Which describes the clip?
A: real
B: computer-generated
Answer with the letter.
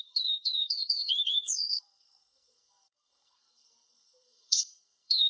B